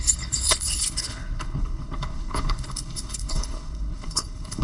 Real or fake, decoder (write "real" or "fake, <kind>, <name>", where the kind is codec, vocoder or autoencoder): fake, codec, HILCodec